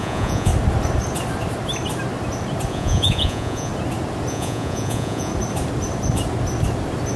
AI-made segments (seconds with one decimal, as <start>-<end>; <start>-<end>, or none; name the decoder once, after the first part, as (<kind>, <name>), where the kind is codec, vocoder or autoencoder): 0.0-0.5 (vocoder, Vocos); 2.7-3.7; 4.3-5.3